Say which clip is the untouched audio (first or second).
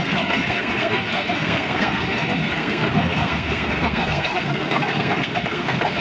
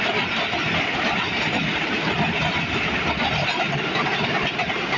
second